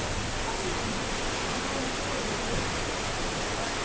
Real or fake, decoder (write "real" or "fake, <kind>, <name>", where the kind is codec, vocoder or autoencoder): real